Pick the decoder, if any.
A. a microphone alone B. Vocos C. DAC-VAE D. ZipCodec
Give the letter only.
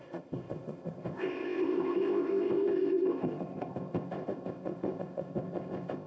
D